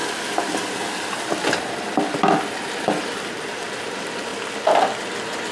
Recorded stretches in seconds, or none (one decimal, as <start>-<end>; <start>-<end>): 0.0-5.5